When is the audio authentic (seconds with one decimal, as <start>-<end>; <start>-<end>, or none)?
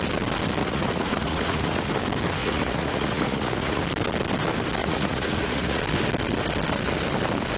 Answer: 0.0-0.6; 1.9-2.4; 3.8-4.8; 5.8-7.6